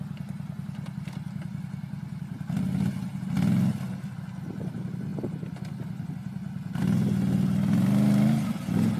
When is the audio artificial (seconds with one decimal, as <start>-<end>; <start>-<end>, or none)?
none